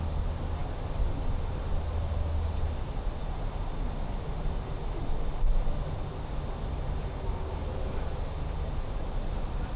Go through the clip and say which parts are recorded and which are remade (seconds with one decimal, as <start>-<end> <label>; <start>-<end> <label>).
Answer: 0.0-9.8 recorded